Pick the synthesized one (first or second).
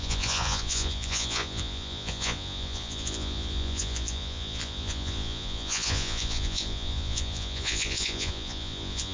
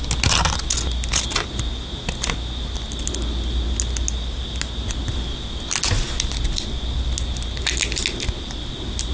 first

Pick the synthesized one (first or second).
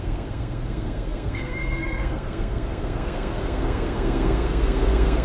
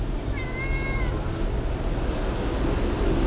first